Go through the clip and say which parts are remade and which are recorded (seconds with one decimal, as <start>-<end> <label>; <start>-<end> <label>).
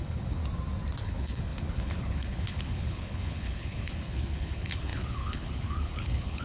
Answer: 0.0-0.4 remade; 0.4-1.0 recorded; 1.0-6.4 remade